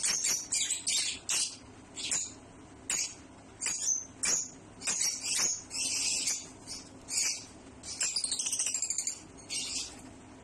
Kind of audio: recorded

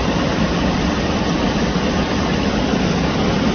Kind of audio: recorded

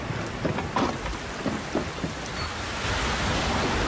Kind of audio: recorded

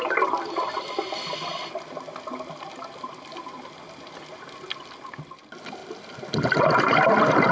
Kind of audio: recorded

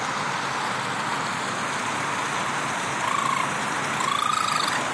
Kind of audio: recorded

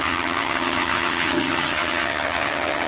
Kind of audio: remade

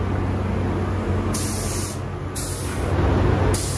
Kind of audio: recorded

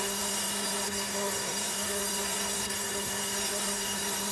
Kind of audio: remade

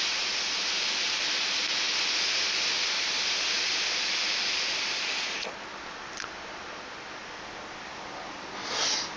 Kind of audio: recorded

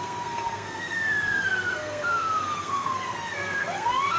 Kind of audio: remade